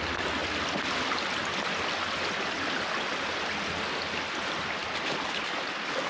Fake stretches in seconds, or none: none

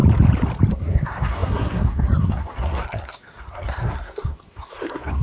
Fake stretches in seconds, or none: 0.7-5.2 (codec, SNAC)

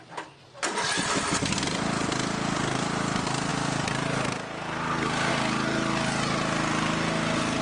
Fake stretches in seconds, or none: none

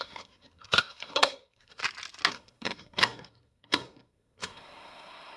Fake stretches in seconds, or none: 0.0-1.8 (codec, SNAC); 2.3-5.4

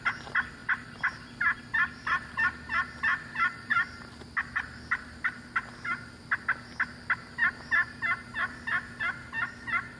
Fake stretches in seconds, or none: none

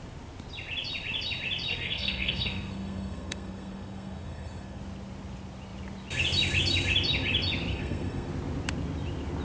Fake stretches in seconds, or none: 1.7-4.8 (codec, SNAC); 7.7-8.3

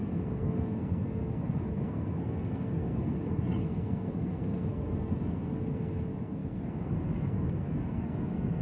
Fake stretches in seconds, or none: 0.0-8.6 (codec, SNAC)